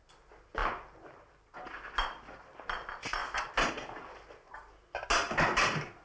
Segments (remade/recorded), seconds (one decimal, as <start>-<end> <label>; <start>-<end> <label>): 0.0-6.0 recorded